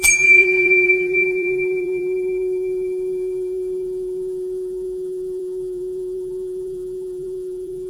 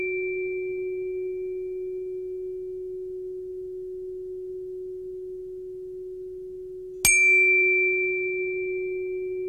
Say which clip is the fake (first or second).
first